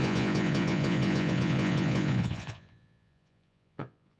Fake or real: fake